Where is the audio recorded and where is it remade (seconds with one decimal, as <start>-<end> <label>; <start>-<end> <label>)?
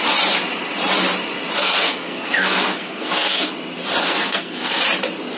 0.0-1.6 recorded; 1.6-3.5 remade; 3.5-4.0 recorded; 4.0-4.8 remade; 4.8-5.4 recorded